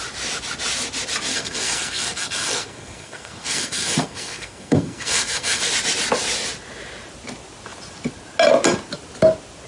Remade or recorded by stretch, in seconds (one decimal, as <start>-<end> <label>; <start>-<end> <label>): 0.0-1.3 recorded; 1.3-5.7 remade; 5.7-9.7 recorded